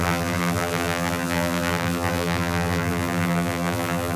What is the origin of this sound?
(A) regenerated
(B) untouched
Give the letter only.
A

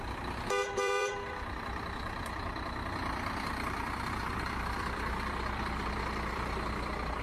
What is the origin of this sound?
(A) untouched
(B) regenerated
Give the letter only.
B